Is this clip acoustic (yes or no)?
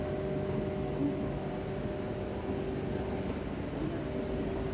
yes